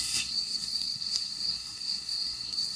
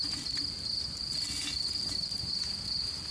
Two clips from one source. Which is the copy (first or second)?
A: first